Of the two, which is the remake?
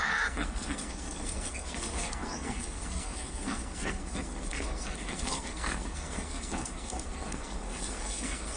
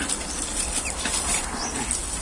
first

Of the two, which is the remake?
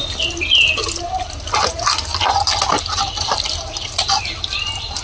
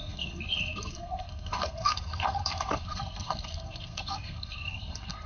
second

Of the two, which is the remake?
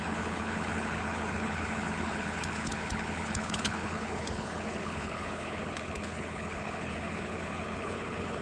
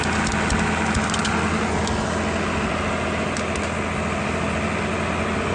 first